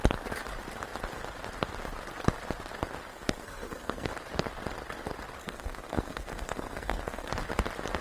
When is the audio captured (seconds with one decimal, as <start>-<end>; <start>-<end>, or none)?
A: 0.0-3.1; 4.1-5.4; 7.3-8.0